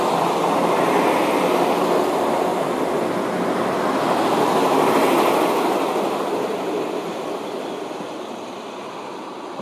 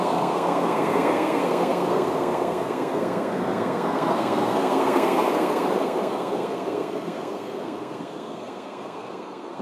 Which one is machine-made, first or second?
second